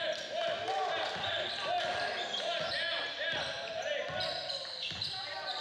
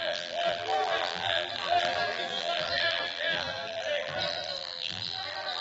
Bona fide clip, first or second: first